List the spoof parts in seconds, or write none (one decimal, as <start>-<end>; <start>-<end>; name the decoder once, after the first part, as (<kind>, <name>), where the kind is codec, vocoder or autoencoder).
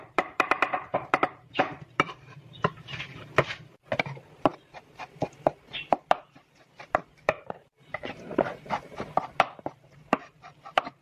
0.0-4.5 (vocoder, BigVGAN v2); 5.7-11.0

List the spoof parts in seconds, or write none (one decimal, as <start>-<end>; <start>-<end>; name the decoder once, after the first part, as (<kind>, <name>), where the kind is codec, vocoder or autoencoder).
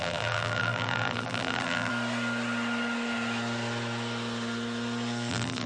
0.0-1.9 (vocoder, BigVGAN v2); 5.3-5.7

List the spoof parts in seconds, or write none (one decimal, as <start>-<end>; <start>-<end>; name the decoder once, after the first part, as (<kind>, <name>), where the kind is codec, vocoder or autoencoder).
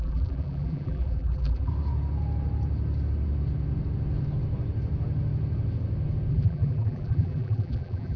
0.0-1.7 (vocoder, BigVGAN v2); 6.3-8.2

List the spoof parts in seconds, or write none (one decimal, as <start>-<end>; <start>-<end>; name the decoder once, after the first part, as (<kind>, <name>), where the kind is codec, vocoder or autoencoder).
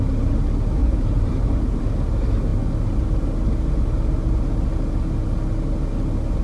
0.8-1.8 (vocoder, BigVGAN v2)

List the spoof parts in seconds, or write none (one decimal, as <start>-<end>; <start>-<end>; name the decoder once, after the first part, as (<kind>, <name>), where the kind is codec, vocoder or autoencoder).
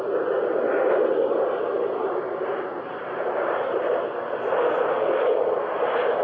2.0-4.0 (vocoder, BigVGAN v2)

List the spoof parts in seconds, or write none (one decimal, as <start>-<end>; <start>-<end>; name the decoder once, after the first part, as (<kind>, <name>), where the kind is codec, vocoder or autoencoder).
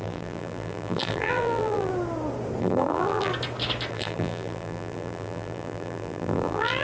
0.0-1.9 (vocoder, BigVGAN v2); 2.6-3.3; 3.9-6.8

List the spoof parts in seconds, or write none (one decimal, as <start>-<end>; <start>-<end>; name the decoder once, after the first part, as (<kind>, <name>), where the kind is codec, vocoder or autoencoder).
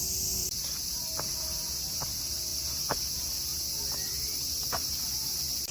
0.4-1.8 (vocoder, BigVGAN v2)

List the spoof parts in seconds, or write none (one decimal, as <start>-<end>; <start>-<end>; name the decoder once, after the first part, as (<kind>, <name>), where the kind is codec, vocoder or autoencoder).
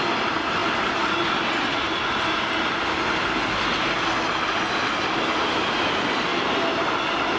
none